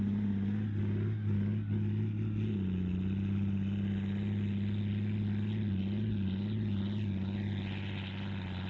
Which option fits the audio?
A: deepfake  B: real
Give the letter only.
B